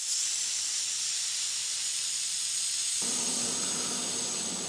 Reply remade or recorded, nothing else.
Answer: recorded